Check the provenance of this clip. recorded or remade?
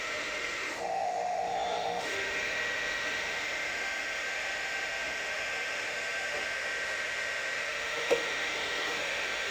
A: remade